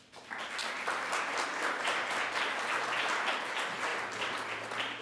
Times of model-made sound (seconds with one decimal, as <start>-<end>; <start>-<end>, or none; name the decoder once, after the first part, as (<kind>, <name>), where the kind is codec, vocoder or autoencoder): 0.6-2.1 (vocoder, BigVGAN v2); 3.9-5.0